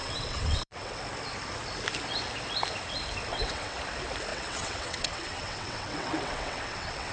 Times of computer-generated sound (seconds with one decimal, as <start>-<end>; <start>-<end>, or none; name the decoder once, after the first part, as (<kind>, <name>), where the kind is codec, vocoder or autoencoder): 0.0-1.0 (vocoder, WaveNeXt); 3.3-3.8; 4.3-7.1